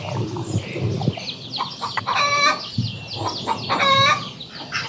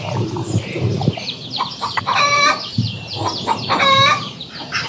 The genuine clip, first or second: first